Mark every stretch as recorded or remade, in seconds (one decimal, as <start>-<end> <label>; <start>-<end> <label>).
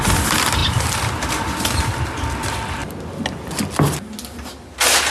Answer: 0.0-5.1 recorded